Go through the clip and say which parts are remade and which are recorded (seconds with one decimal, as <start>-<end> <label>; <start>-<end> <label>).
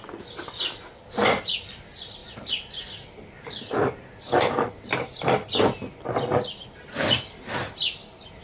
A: 0.0-8.4 recorded